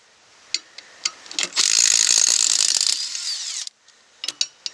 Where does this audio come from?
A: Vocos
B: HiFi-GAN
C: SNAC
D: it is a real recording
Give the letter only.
D